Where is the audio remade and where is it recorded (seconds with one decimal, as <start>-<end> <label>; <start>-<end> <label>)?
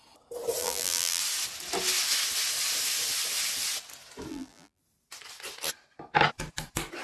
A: 0.0-0.6 recorded; 0.6-1.2 remade; 1.2-4.3 recorded; 4.3-4.8 remade; 4.8-7.0 recorded